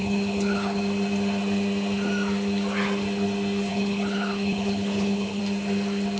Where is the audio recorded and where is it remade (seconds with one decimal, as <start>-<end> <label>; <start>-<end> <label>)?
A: 0.0-0.8 remade; 0.8-3.7 recorded; 3.7-5.4 remade; 5.4-6.2 recorded